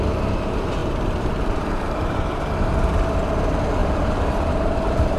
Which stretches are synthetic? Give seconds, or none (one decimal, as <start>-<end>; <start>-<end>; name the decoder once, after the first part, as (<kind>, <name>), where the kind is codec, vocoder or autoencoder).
0.8-2.5 (vocoder, BigVGAN v2); 3.8-5.2